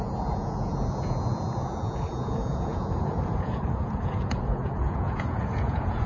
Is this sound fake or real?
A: fake